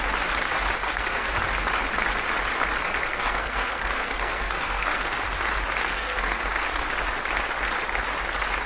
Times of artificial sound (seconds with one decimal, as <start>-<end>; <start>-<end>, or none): 0.8-1.3; 2.8-5.1; 5.8-6.4